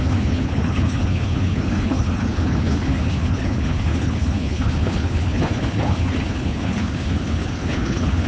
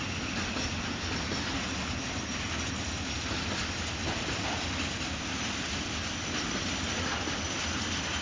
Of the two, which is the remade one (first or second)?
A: first